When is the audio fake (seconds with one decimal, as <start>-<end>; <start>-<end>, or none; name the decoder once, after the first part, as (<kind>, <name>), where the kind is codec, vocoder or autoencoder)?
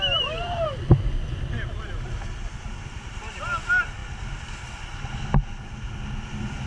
none